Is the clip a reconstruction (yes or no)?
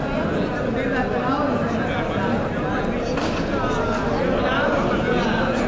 no